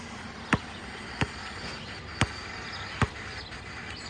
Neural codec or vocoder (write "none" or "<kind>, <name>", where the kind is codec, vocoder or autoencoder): none